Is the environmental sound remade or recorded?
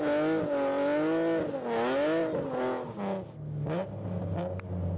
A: recorded